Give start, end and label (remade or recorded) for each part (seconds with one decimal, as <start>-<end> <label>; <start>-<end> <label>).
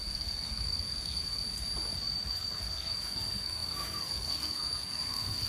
0.0-1.4 remade; 1.4-2.3 recorded; 2.3-5.5 remade